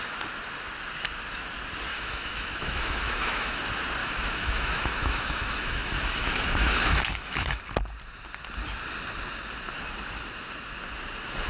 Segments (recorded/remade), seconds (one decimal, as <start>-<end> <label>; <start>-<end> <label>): 0.0-1.9 recorded; 1.9-3.6 remade; 3.6-4.0 recorded; 4.0-7.6 remade; 7.6-11.5 recorded